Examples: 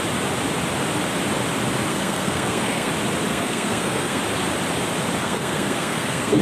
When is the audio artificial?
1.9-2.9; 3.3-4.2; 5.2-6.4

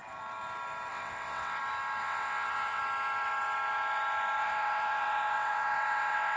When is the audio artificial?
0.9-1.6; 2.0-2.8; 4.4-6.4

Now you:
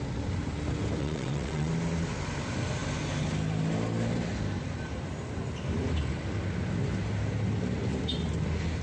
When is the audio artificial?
1.0-1.7

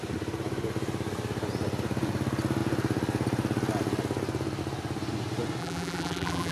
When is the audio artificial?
5.6-6.5

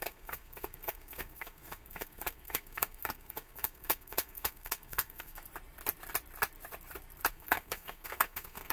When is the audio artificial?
0.0-5.4; 7.3-8.7